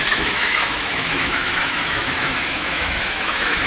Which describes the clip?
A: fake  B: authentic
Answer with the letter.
A